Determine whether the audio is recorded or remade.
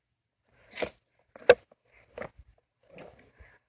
recorded